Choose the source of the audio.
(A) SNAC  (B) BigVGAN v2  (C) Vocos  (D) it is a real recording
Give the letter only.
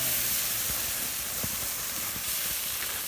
B